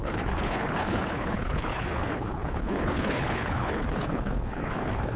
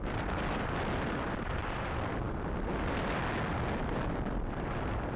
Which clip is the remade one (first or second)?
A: first